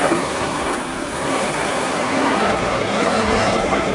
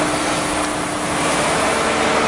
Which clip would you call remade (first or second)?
first